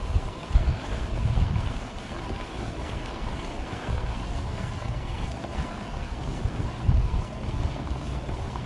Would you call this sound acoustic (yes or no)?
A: no